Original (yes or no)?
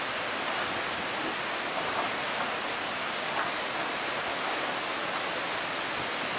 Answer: yes